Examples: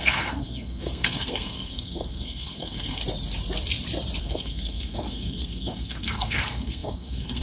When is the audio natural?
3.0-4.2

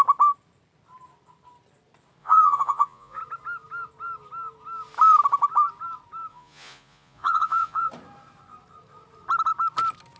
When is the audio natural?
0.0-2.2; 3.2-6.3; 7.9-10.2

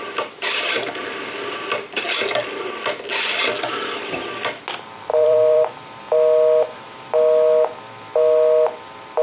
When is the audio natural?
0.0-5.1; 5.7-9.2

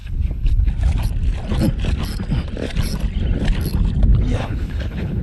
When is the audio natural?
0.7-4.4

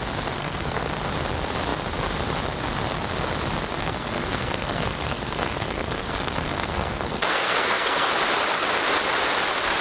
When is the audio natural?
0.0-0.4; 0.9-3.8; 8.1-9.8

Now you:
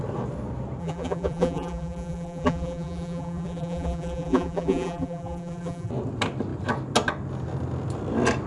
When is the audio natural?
0.0-0.8; 5.9-8.5

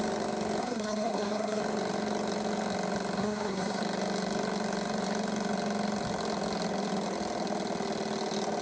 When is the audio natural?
0.0-0.6; 1.6-3.2; 3.8-8.6